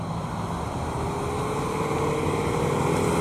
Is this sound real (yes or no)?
yes